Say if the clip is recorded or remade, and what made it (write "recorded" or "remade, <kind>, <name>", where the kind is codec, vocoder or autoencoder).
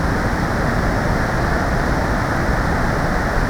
recorded